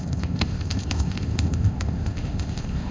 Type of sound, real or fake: fake